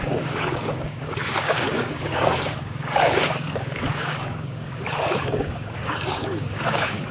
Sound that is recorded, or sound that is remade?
remade